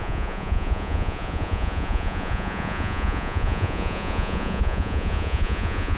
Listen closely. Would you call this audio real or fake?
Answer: fake